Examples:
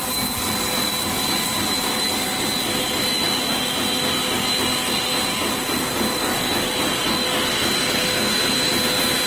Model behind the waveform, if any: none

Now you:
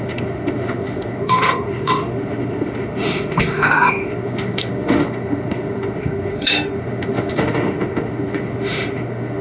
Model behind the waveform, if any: autoencoder, DAC-VAE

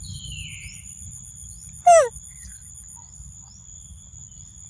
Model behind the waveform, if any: none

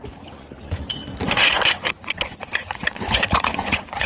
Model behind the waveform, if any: vocoder, Vocos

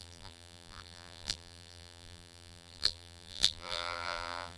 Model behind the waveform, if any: vocoder, BigVGAN v2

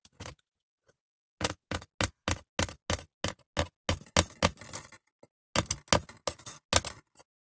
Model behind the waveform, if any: none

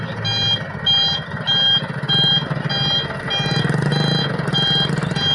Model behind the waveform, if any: none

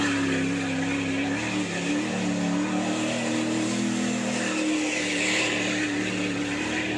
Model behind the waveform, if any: none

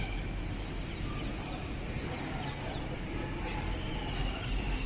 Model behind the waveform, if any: none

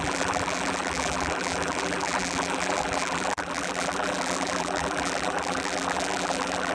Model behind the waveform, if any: vocoder, BigVGAN v2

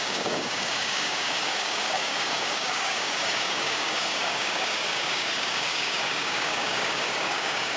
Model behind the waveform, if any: codec, DAC